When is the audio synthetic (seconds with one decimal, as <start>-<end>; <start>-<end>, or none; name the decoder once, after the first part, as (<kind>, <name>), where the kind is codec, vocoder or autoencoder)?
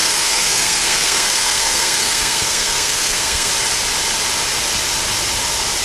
0.0-3.5 (codec, SNAC)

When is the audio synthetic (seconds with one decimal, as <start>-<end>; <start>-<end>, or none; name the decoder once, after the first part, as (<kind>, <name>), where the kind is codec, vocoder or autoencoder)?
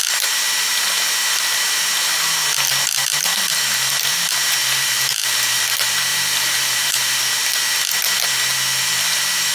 4.6-5.6 (vocoder, BigVGAN v2); 6.1-7.2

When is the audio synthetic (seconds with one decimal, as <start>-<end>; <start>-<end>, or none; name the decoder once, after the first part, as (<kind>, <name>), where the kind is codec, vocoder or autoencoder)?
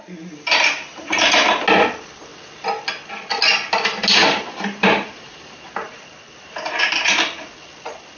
0.9-1.5 (vocoder, BigVGAN v2); 4.2-5.7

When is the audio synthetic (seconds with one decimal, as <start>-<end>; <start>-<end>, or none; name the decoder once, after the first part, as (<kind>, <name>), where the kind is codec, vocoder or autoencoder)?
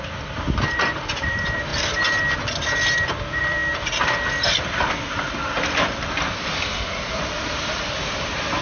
0.0-1.7 (vocoder, BigVGAN v2); 3.1-3.6; 4.3-8.6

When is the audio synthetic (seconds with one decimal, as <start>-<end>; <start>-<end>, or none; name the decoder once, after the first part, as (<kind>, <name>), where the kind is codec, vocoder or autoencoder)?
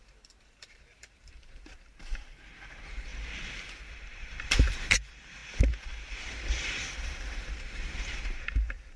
0.0-3.1 (vocoder, BigVGAN v2); 3.9-5.4; 6.1-9.0